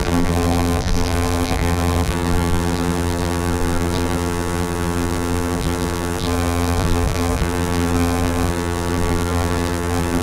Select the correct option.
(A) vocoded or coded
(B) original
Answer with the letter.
A